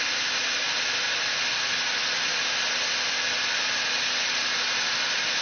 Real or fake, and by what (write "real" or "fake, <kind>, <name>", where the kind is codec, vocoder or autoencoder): real